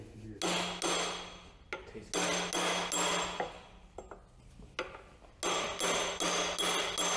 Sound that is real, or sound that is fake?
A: real